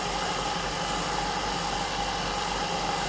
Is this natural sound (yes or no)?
yes